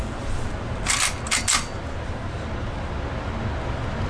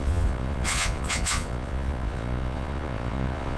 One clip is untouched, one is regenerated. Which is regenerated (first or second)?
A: second